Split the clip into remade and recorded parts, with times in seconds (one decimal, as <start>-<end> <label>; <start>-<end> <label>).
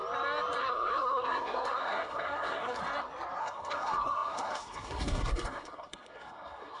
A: 0.0-0.6 recorded; 0.6-2.8 remade; 2.8-3.4 recorded; 3.4-6.8 remade